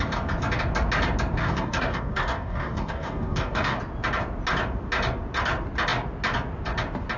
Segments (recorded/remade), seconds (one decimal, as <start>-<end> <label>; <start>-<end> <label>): 0.0-1.4 recorded; 1.4-3.8 remade; 3.8-7.2 recorded